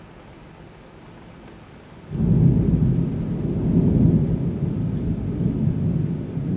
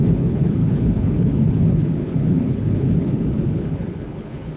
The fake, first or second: second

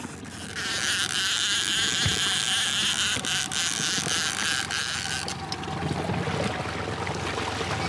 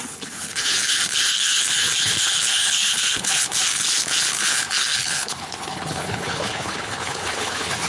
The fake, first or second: second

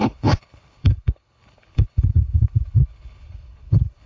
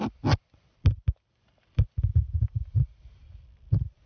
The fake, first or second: first